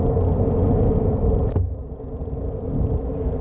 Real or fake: real